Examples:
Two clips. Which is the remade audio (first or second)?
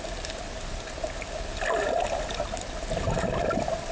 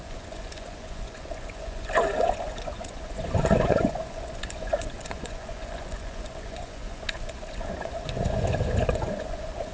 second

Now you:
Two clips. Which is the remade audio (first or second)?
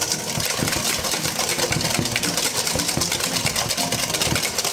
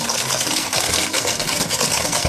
second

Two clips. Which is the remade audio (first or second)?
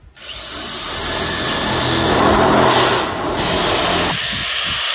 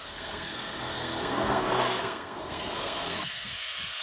second